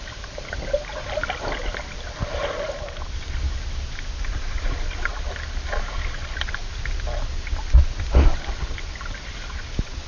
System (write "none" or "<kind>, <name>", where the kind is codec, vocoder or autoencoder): none